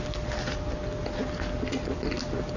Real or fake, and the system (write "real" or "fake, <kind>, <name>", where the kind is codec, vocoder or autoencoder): real